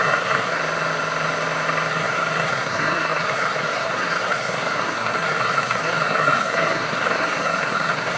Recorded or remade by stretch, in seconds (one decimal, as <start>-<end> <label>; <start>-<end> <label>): 0.0-0.6 remade; 0.6-1.9 recorded; 1.9-8.2 remade